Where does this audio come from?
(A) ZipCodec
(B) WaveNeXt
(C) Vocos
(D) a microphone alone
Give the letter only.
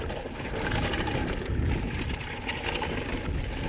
D